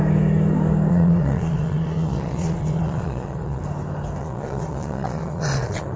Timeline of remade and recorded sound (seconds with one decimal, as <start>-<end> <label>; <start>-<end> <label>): 0.0-0.9 recorded; 0.9-3.6 remade; 3.6-4.2 recorded; 4.2-6.0 remade